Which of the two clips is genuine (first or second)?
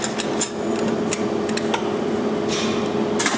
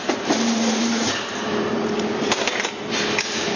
first